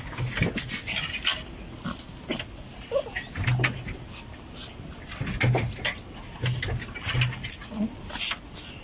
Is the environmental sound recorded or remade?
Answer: recorded